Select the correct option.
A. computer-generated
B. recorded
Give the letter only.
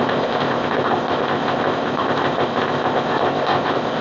A